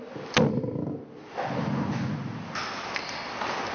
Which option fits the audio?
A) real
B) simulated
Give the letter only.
A